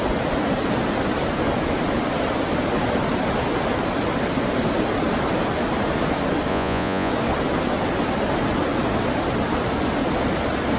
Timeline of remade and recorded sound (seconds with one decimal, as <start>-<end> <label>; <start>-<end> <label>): 0.0-6.5 recorded; 6.5-7.1 remade; 7.1-10.8 recorded